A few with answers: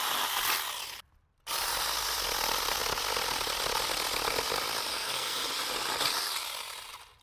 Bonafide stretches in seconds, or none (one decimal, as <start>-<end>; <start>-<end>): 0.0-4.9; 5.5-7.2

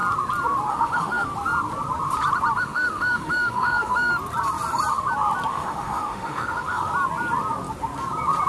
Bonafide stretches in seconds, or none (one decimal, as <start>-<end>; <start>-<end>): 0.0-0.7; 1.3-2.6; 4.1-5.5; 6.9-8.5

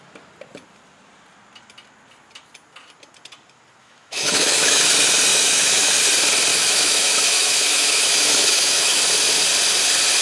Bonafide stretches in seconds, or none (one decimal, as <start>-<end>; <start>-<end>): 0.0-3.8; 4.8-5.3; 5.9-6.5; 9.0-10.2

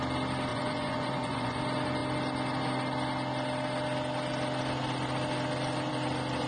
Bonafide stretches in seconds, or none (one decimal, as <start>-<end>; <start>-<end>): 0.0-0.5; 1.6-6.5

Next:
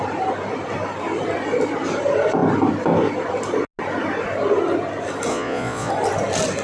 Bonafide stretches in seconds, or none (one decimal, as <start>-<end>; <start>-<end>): 0.0-5.3; 5.9-6.6